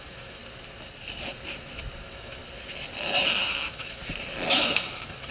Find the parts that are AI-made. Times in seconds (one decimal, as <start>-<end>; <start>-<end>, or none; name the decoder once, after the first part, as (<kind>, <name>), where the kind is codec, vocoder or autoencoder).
0.0-0.4 (autoencoder, DAC-VAE); 2.0-2.4; 3.4-4.0; 4.5-5.3